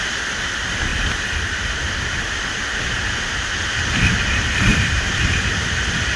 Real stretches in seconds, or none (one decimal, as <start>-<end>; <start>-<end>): 0.0-0.9; 1.8-4.7; 5.2-6.2